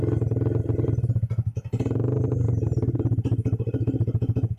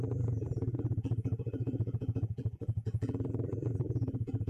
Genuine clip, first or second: first